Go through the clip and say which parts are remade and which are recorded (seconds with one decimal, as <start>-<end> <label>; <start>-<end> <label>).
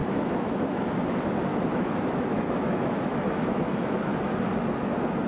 0.0-1.0 remade; 1.0-1.5 recorded; 1.5-4.1 remade; 4.1-5.3 recorded